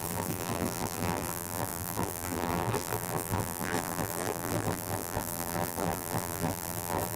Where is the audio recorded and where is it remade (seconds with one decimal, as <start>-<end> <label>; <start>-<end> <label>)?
0.0-7.2 remade